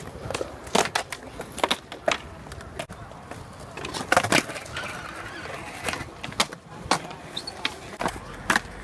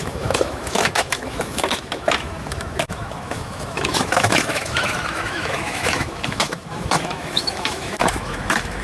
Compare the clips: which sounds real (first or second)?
first